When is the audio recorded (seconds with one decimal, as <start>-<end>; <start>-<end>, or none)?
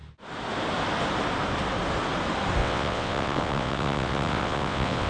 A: 0.0-2.6